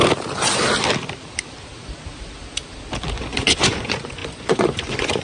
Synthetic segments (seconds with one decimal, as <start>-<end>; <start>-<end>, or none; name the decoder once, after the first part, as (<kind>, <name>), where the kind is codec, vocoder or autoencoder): 3.1-5.2 (vocoder, Vocos)